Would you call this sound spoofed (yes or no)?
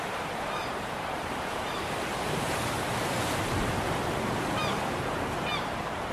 yes